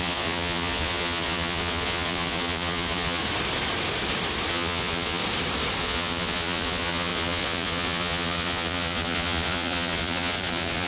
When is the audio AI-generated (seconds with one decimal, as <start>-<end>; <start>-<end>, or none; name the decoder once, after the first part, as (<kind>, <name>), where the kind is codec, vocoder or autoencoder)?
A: 0.0-3.2 (vocoder, Vocos); 4.5-5.2; 5.8-10.9